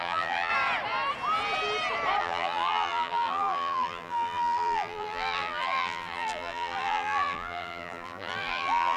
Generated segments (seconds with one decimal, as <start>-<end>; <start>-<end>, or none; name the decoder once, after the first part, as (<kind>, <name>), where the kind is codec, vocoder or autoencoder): 0.0-0.5 (vocoder, BigVGAN v2); 2.2-9.0